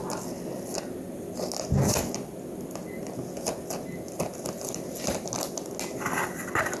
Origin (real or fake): real